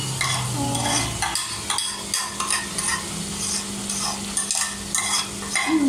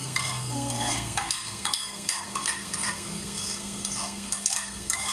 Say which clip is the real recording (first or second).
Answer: first